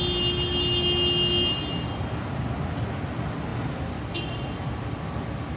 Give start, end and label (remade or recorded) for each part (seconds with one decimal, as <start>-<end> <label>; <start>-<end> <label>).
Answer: 0.0-5.6 recorded